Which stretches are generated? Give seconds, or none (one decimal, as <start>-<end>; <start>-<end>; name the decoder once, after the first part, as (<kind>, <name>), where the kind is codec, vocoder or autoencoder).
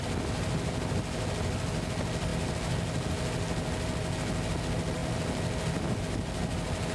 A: none